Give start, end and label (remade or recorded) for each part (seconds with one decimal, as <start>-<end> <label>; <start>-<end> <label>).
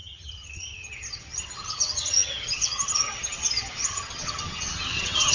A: 0.0-5.3 remade